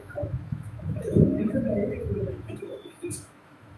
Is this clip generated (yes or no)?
yes